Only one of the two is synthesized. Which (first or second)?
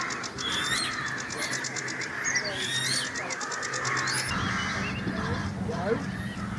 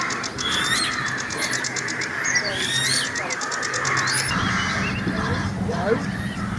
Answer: second